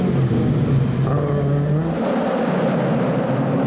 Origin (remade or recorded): recorded